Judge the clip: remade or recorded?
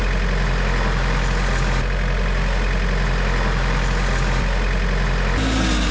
recorded